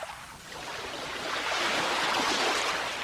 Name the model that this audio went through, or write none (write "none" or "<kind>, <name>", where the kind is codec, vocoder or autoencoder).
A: none